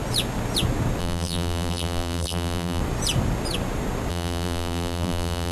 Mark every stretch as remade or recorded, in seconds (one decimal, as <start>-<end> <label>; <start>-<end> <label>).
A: 0.0-1.0 recorded; 1.0-2.8 remade; 2.8-4.1 recorded; 4.1-5.5 remade